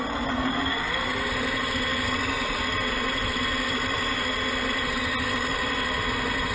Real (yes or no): yes